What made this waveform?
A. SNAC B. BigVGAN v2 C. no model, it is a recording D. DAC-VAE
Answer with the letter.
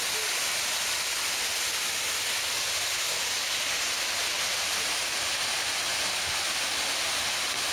C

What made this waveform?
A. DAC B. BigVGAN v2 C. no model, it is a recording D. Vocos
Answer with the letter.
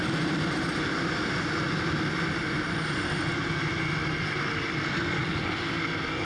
C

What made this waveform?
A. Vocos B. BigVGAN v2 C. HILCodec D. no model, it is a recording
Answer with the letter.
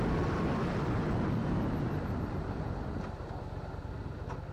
D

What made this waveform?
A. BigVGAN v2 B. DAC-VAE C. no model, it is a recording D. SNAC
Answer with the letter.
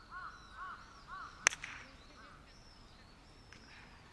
C